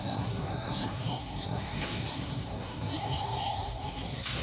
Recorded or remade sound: remade